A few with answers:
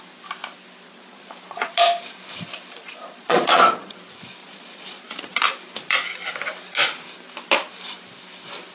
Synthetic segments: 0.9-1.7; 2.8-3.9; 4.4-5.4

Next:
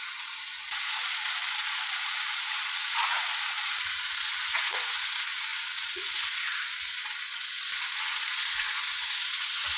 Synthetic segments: 0.0-9.8